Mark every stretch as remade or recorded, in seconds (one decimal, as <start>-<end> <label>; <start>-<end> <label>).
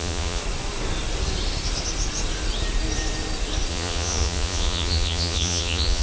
0.0-0.4 remade; 0.4-3.7 recorded; 3.7-6.0 remade